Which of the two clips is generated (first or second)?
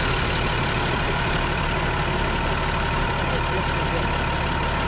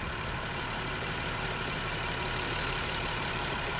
second